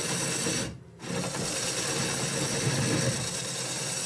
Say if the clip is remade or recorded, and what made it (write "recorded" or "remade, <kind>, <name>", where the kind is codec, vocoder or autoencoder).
recorded